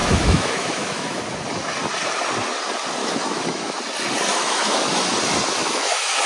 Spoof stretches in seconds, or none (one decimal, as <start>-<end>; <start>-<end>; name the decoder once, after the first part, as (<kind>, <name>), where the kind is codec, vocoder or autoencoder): 0.0-1.2 (autoencoder, DAC-VAE); 3.0-3.8; 4.4-5.0; 5.6-6.3